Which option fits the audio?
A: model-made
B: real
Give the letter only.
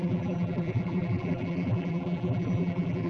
A